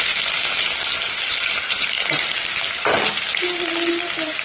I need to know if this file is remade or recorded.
recorded